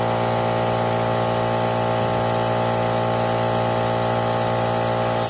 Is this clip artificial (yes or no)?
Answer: no